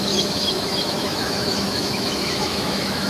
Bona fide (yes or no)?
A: no